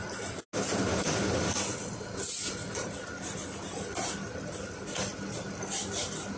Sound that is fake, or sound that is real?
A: real